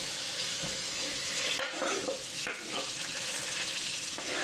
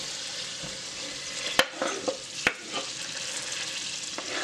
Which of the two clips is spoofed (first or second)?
first